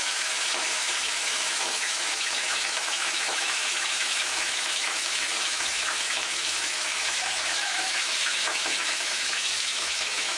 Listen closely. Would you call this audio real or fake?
fake